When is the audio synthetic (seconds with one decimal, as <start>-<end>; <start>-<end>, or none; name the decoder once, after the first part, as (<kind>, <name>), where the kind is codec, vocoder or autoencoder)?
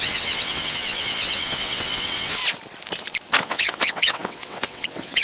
0.0-2.4 (vocoder, WaveNeXt); 3.4-5.2